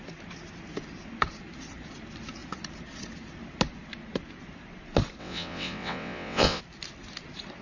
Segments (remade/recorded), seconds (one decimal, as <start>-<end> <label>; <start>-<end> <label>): 0.0-5.2 recorded; 5.2-6.6 remade; 6.6-7.6 recorded